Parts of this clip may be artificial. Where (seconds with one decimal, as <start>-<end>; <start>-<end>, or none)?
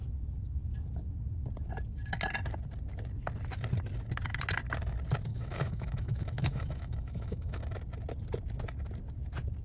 5.3-7.6